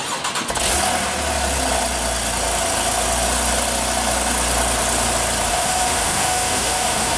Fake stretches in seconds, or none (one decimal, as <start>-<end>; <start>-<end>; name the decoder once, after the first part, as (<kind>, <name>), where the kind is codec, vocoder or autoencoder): 5.5-7.2 (autoencoder, DAC-VAE)